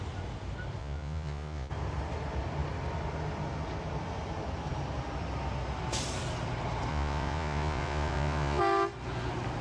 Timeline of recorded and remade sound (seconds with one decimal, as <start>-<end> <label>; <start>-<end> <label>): 0.0-0.8 recorded; 0.8-1.7 remade; 1.7-6.9 recorded; 6.9-8.6 remade; 8.6-9.6 recorded